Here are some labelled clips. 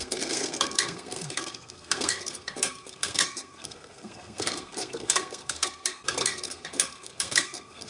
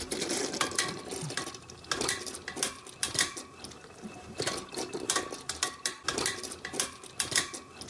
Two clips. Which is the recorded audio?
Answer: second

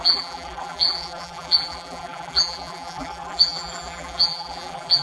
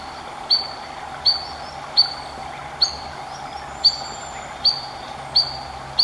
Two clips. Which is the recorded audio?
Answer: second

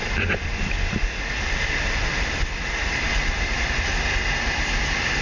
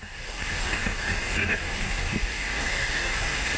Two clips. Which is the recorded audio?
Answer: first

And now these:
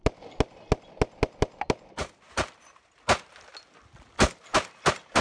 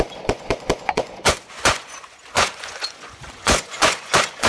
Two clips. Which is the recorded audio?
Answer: first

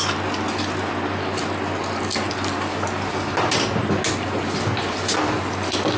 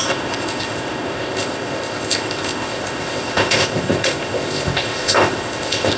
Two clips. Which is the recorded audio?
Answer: first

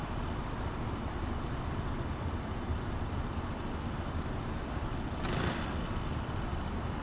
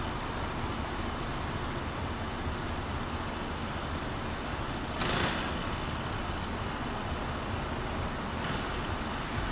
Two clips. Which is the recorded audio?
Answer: second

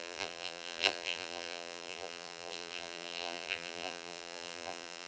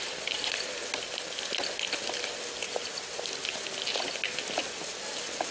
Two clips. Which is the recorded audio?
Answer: second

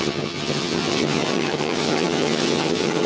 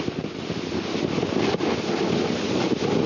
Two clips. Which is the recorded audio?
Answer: second